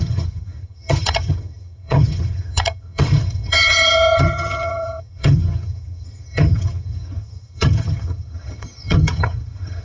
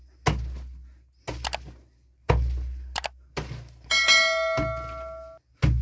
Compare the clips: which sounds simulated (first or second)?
first